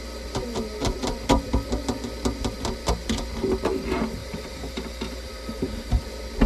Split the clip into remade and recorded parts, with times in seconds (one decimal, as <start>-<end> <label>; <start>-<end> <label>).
0.0-4.2 recorded; 4.2-6.0 remade; 6.0-6.5 recorded